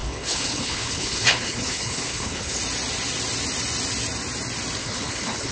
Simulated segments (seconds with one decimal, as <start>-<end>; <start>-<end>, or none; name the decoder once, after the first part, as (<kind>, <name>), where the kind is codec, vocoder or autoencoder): 0.0-2.6 (codec, HILCodec); 4.8-5.5